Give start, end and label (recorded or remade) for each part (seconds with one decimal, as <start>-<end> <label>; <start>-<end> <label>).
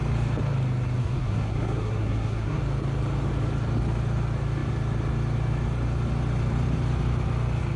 0.0-1.0 recorded; 1.0-2.6 remade; 2.6-7.8 recorded